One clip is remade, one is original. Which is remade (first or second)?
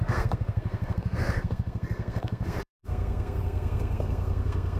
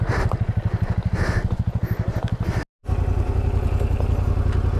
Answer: first